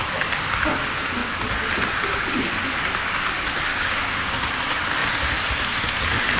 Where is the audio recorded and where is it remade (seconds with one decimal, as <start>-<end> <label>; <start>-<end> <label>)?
0.0-3.7 recorded; 3.7-4.5 remade; 4.5-6.4 recorded